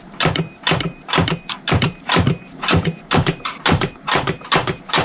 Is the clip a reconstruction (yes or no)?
yes